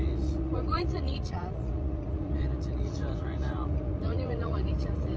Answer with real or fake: fake